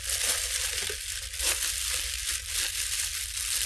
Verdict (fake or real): real